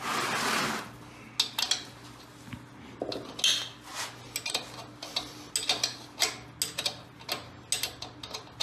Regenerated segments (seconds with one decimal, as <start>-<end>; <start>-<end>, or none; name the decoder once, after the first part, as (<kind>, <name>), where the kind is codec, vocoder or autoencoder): none